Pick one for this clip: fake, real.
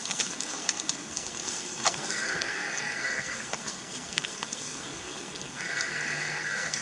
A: fake